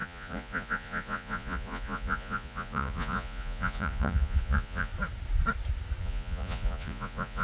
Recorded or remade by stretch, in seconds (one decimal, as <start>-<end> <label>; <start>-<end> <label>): 0.0-4.9 remade; 4.9-6.0 recorded; 6.0-7.4 remade